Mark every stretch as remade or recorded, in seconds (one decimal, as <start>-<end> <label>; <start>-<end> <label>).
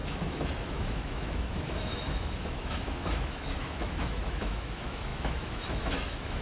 0.0-6.4 remade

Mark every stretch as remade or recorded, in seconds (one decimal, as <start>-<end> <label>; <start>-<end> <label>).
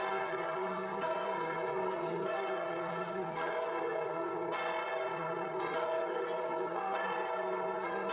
0.0-8.1 remade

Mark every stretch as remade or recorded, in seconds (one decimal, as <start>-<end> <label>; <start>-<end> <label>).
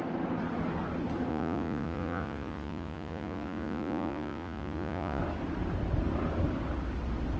0.0-1.3 recorded; 1.3-5.2 remade; 5.2-7.4 recorded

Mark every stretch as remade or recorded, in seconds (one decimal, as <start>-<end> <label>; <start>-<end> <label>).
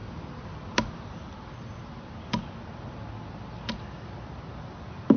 0.0-5.2 recorded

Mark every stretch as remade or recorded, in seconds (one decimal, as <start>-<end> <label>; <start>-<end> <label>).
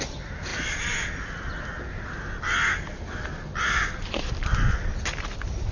0.0-5.7 recorded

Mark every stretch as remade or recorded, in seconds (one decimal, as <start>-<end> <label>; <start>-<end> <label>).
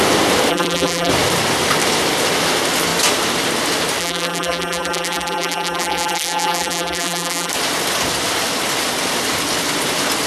0.0-0.5 recorded; 0.5-1.1 remade; 1.1-4.0 recorded; 4.0-7.5 remade; 7.5-10.3 recorded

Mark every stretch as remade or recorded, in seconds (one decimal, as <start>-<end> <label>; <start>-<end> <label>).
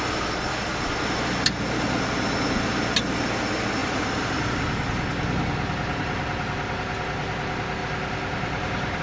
0.0-3.8 recorded; 3.8-4.5 remade; 4.5-7.8 recorded; 7.8-9.0 remade